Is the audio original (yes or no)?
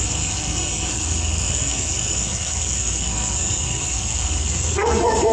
no